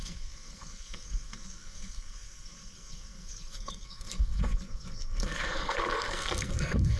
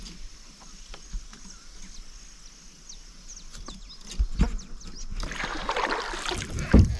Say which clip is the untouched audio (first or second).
second